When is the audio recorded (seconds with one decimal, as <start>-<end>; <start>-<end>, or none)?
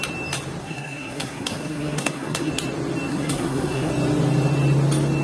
0.0-0.6; 2.5-3.1; 3.9-5.2